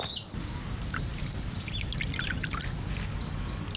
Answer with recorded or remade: recorded